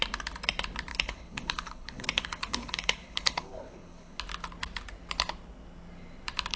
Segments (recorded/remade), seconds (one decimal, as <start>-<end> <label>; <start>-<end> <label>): 0.0-0.9 recorded; 0.9-4.2 remade; 4.2-6.6 recorded